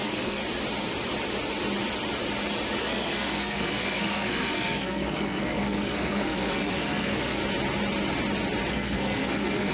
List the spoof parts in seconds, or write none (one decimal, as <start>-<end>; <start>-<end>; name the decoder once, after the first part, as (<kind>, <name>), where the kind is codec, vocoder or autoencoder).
0.0-0.4 (codec, SNAC); 2.8-7.4; 8.7-9.7

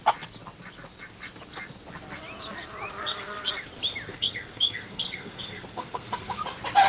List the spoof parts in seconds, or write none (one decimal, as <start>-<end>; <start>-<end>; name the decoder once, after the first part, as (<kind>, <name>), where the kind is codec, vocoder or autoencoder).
3.0-3.5 (codec, SNAC); 4.1-6.4

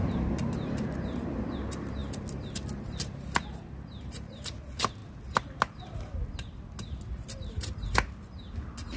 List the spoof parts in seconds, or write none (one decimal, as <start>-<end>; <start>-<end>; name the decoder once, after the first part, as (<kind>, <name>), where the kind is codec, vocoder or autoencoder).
none

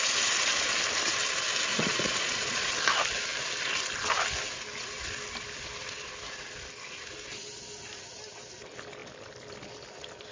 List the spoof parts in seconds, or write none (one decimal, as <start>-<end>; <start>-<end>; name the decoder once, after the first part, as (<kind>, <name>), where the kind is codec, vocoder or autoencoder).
1.7-2.7 (vocoder, Vocos)